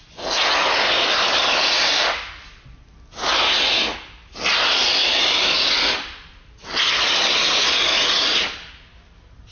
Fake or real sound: real